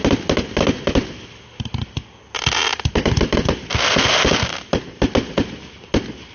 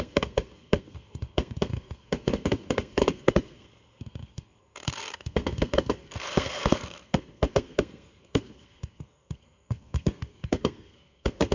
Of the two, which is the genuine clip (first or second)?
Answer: first